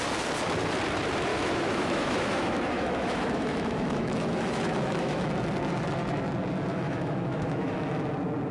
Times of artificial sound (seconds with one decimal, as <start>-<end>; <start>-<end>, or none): 1.3-5.3; 6.7-8.0